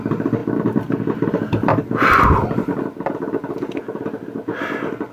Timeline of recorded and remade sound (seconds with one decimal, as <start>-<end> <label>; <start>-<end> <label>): 0.0-0.4 recorded; 0.4-1.8 remade; 1.8-5.1 recorded